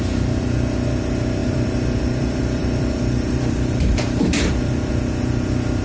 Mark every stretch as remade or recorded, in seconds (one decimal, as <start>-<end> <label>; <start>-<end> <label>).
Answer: 0.0-1.4 recorded; 1.4-4.9 remade; 4.9-5.8 recorded